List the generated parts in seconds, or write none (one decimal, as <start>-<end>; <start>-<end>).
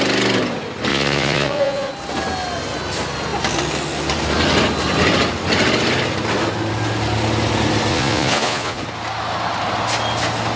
0.9-1.9; 7.9-8.8